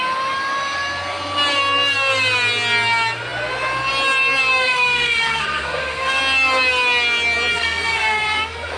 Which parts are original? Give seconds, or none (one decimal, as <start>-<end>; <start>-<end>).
0.0-4.5; 6.2-7.5